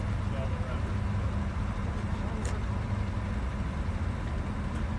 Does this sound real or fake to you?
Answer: real